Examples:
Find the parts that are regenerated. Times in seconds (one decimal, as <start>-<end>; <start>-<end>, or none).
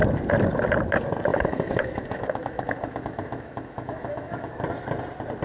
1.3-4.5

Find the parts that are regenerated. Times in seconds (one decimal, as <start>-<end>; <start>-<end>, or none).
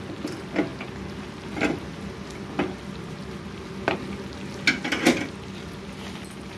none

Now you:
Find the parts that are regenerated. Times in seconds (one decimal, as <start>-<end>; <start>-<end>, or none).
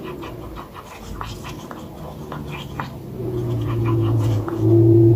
3.2-5.2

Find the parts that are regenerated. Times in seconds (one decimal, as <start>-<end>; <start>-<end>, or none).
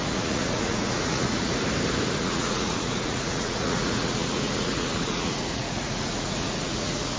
0.0-1.5; 2.2-7.2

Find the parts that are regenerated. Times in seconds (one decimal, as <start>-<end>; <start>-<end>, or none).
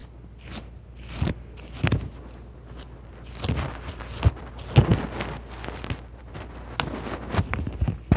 none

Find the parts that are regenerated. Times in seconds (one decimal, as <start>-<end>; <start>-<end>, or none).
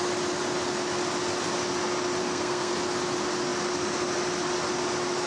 2.2-2.7